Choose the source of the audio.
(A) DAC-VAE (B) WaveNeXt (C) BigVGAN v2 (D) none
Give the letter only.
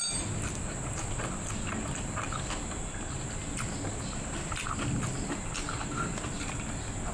D